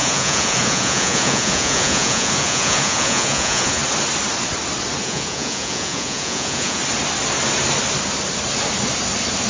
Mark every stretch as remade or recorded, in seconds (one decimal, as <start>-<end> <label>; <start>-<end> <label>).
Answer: 0.0-3.8 remade; 3.8-5.0 recorded; 5.0-6.8 remade; 6.8-9.5 recorded

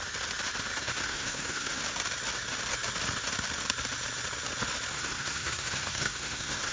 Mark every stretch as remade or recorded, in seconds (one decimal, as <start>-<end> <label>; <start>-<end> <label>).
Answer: 0.0-0.8 recorded; 0.8-1.8 remade; 1.8-4.9 recorded; 4.9-6.7 remade